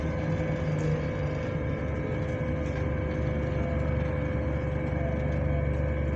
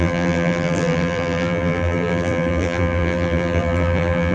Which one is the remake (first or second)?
second